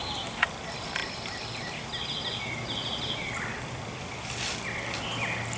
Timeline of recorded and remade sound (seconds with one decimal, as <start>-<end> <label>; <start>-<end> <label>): 0.0-5.6 recorded